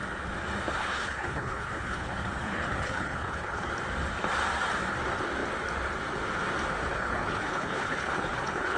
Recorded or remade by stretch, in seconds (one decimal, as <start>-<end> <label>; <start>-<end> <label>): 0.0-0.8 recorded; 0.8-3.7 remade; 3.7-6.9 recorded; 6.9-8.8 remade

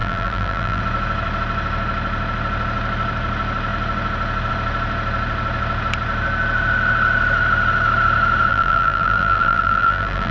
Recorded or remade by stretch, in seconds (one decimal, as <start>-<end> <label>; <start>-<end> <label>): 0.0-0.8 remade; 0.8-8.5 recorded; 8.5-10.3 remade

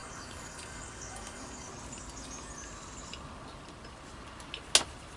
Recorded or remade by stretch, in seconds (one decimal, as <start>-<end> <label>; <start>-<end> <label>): 0.0-1.7 remade; 1.7-5.2 recorded

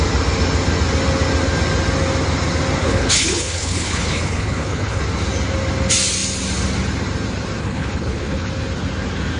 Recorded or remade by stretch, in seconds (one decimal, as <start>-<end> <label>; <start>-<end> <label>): 0.0-2.8 recorded; 2.8-5.0 remade; 5.0-7.6 recorded; 7.6-8.5 remade; 8.5-9.4 recorded

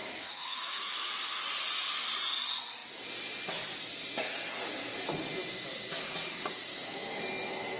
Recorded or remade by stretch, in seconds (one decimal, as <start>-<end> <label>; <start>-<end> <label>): 0.0-1.1 remade; 1.1-6.7 recorded; 6.7-7.2 remade; 7.2-7.8 recorded

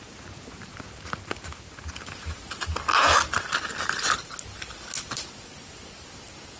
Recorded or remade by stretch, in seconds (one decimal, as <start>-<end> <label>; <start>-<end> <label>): 0.0-6.6 recorded

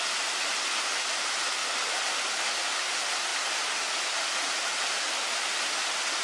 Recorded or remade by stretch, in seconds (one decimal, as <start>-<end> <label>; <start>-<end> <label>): 0.0-6.2 recorded

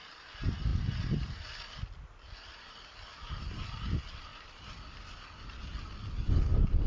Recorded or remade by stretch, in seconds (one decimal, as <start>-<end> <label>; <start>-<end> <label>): 0.0-6.9 recorded